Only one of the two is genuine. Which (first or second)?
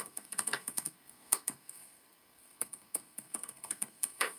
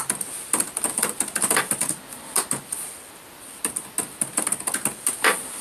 second